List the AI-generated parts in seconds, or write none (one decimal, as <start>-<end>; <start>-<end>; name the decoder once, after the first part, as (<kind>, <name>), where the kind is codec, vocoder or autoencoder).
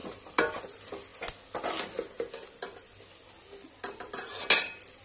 none